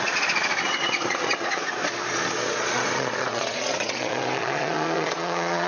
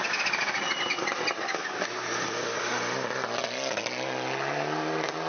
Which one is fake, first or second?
first